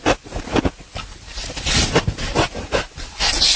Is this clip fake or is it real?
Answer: real